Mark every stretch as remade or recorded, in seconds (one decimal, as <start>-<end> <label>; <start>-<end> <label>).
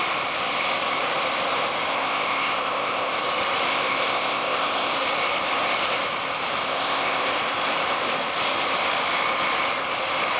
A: 0.0-1.9 recorded; 1.9-3.1 remade; 3.1-3.7 recorded; 3.7-4.9 remade; 4.9-6.7 recorded; 6.7-7.3 remade; 7.3-10.4 recorded